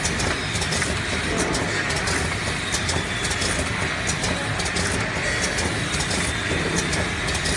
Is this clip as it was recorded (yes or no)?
yes